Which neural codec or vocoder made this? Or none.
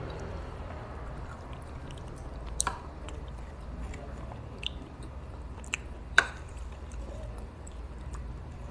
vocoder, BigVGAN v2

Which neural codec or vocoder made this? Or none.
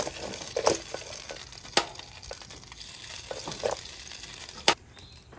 none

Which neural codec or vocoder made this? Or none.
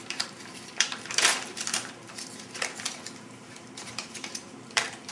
vocoder, BigVGAN v2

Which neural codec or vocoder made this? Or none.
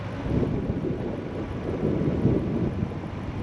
none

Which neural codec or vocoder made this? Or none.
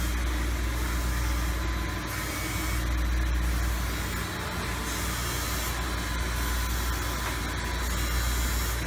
none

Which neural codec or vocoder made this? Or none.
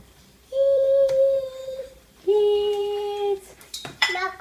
vocoder, BigVGAN v2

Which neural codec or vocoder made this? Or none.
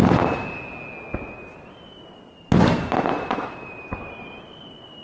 none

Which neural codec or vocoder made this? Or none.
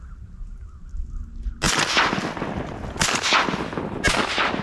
none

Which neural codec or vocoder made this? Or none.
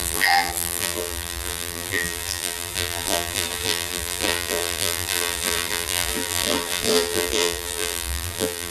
vocoder, BigVGAN v2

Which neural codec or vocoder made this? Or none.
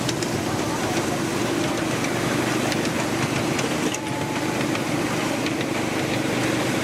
none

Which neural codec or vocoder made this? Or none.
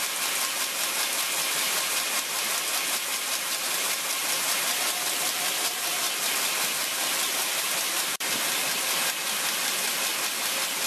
vocoder, BigVGAN v2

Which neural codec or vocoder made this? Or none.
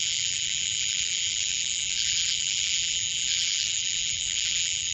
vocoder, BigVGAN v2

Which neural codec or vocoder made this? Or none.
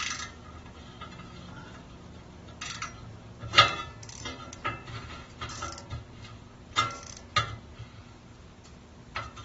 none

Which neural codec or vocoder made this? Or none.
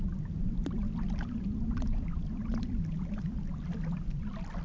none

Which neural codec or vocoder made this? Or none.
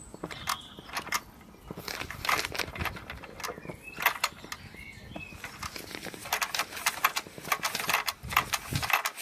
none